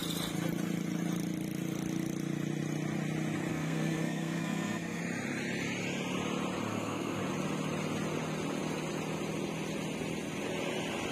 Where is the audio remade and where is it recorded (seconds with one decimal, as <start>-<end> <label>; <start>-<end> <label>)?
0.0-3.5 recorded; 3.5-5.0 remade; 5.0-6.7 recorded; 6.7-7.2 remade; 7.2-11.1 recorded